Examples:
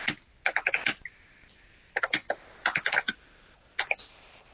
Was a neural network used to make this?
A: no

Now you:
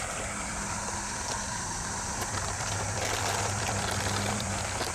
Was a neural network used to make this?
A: yes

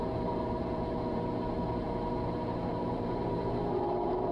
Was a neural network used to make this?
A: yes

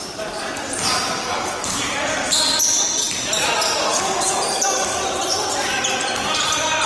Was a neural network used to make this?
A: yes